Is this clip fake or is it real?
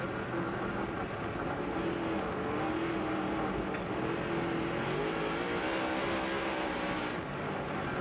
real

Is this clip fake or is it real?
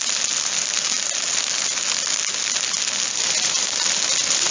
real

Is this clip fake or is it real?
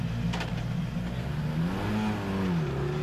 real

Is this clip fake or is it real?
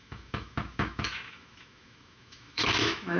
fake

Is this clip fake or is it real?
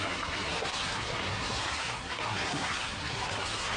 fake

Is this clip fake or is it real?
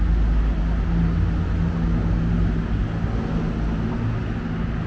real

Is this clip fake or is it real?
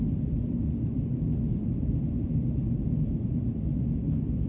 real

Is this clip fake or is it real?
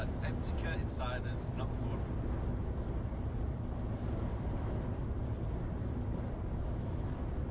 fake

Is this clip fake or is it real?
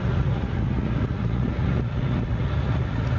fake